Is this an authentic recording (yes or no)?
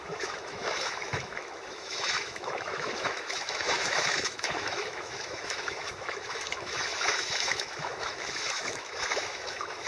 no